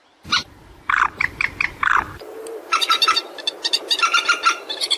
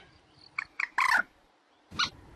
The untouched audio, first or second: second